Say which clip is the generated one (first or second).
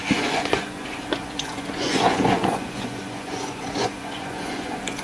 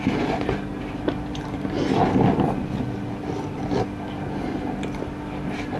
first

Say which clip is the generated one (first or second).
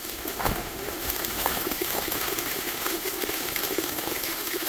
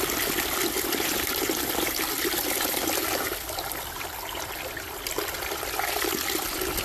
first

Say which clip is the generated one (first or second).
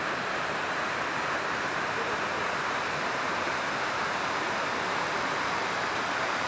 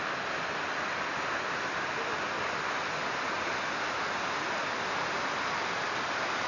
first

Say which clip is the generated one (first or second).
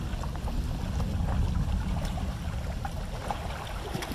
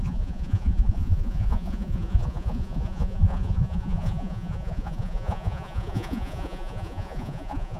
second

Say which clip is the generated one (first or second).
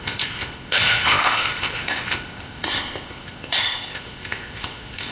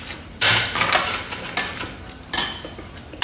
first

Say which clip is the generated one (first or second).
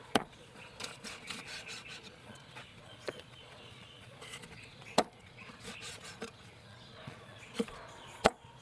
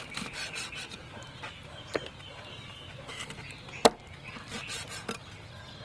first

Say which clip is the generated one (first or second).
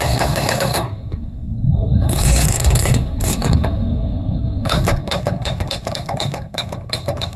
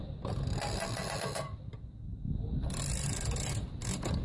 first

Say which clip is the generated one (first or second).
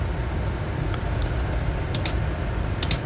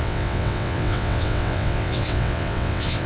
second